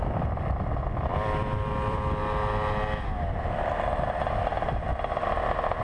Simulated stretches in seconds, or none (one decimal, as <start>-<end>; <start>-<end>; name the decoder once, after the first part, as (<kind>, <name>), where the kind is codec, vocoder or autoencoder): 0.0-2.2 (vocoder, BigVGAN v2); 4.3-4.9